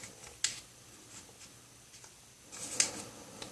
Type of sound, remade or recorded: recorded